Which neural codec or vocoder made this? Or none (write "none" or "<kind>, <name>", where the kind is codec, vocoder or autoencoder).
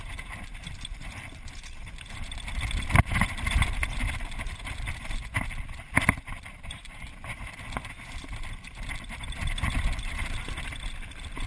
vocoder, BigVGAN v2